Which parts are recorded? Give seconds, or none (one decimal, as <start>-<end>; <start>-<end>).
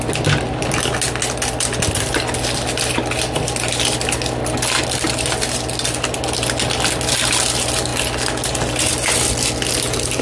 0.0-10.2